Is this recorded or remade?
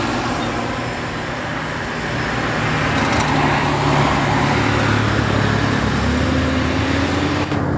recorded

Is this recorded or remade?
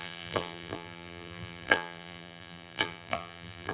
remade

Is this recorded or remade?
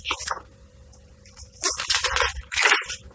remade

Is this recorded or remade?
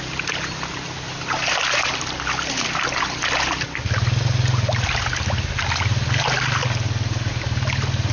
recorded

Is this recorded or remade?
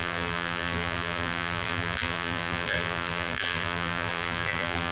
remade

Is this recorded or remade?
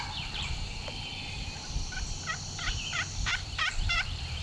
remade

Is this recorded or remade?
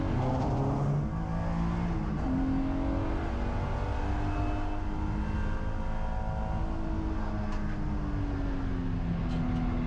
recorded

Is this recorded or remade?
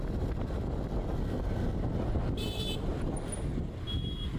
recorded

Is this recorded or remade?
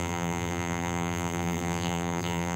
remade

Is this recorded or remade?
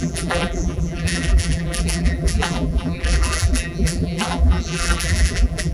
remade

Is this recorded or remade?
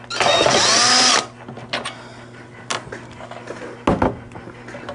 recorded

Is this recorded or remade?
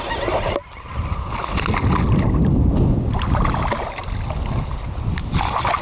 recorded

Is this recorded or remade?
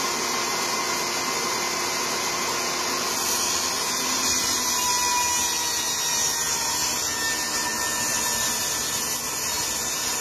recorded